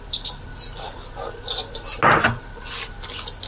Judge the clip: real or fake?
real